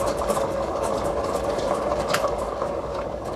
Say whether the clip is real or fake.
fake